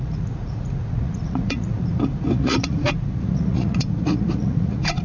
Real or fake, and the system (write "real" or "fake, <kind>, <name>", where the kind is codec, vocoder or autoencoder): fake, vocoder, Vocos